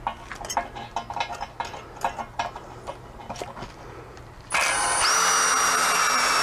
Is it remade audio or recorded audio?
recorded